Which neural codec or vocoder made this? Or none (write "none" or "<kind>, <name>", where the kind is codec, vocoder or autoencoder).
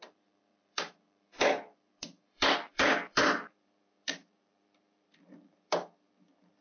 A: vocoder, BigVGAN v2